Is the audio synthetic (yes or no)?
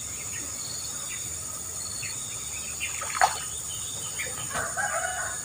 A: no